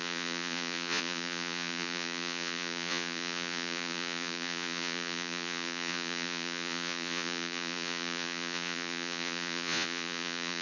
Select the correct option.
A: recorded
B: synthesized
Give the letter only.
B